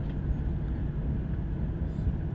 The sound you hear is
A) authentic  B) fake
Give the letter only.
A